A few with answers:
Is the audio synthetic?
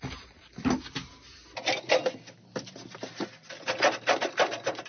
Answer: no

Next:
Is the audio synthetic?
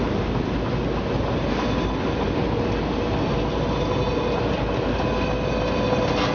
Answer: no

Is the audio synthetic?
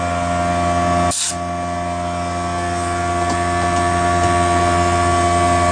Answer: no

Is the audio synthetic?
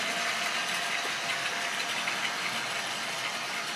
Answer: no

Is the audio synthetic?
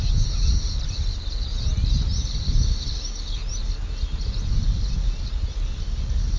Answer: no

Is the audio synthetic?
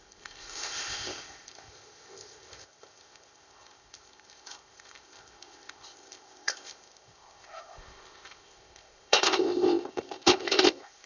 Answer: yes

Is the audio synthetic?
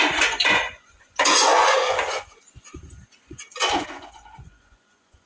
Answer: yes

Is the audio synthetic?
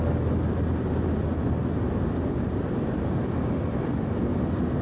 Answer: no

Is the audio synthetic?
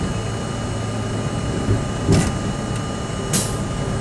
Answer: no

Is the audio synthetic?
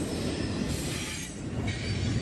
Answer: yes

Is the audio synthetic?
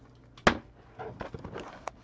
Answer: no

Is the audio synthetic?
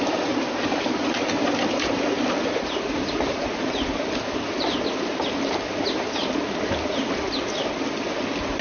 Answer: no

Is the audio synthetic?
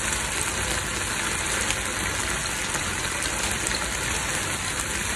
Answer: no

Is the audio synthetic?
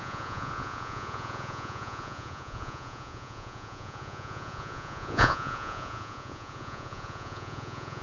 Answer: yes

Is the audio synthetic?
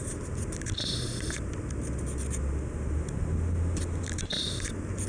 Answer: no